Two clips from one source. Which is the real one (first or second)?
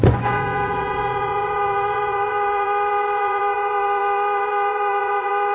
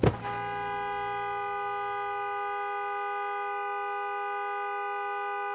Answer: second